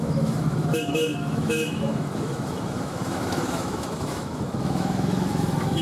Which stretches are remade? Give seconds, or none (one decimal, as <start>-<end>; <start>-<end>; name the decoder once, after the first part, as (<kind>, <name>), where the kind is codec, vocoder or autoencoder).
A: 0.0-5.8 (autoencoder, DAC-VAE)